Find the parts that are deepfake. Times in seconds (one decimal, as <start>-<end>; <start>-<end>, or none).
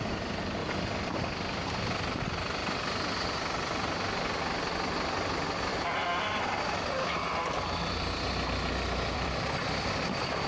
0.6-2.2; 5.7-9.8